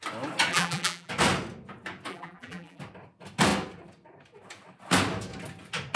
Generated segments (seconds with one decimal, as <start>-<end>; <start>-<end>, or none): 0.5-1.1; 2.1-2.8